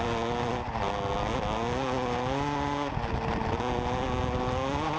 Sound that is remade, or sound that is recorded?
recorded